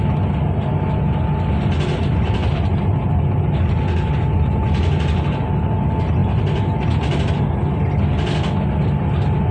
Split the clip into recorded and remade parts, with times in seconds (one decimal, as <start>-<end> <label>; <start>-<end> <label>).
0.0-9.5 recorded